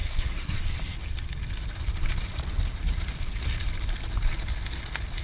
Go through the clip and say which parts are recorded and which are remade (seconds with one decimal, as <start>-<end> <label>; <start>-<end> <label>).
0.0-0.6 remade; 0.6-5.2 recorded

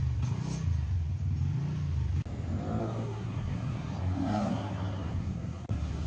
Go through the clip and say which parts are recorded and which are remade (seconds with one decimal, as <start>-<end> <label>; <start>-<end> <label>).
0.0-2.8 recorded; 2.8-6.1 remade

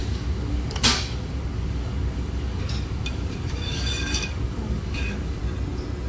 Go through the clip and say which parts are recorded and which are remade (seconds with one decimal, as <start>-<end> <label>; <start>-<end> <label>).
0.0-5.4 remade; 5.4-6.1 recorded

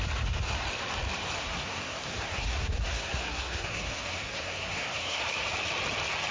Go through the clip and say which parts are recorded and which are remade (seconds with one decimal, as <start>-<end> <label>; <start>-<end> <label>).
0.0-1.4 recorded; 1.4-5.2 remade; 5.2-6.3 recorded

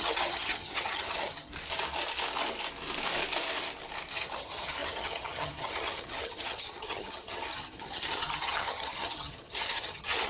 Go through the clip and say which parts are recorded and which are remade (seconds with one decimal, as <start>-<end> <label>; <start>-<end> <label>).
0.0-1.5 remade; 1.5-4.1 recorded; 4.1-10.3 remade

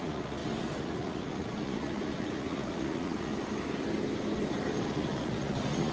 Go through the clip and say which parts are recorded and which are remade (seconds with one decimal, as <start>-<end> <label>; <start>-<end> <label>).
0.0-3.3 remade; 3.3-4.8 recorded; 4.8-5.9 remade